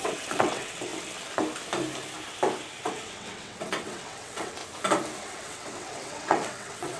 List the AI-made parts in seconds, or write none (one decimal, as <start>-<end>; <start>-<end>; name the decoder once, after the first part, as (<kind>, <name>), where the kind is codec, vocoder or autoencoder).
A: 0.0-0.9 (vocoder, WaveNeXt); 2.8-4.6; 5.2-7.0

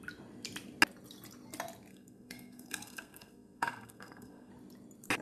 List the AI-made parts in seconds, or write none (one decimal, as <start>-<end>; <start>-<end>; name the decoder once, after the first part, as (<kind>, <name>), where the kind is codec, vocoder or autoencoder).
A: 1.9-4.5 (codec, SNAC)

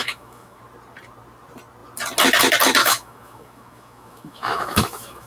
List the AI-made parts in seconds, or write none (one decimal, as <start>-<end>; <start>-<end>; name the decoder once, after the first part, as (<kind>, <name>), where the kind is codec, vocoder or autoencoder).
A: 0.0-0.6 (autoencoder, DAC-VAE); 2.8-5.3

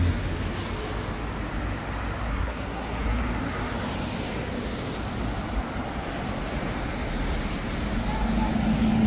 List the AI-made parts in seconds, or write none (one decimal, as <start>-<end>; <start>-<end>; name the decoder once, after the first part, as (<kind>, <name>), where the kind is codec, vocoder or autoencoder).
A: 2.3-3.2 (codec, SNAC)

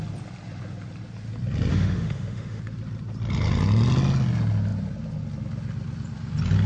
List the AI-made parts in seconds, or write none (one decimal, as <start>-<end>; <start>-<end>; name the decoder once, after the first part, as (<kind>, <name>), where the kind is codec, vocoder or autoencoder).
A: 1.7-2.6 (autoencoder, DAC-VAE)

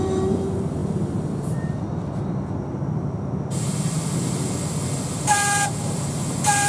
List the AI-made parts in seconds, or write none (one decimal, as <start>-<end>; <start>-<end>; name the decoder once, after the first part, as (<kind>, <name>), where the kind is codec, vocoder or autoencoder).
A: none

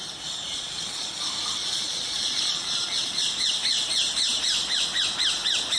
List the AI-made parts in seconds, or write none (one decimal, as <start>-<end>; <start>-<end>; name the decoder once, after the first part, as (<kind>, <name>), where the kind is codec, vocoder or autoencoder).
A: 0.5-1.2 (vocoder, Vocos); 1.6-3.3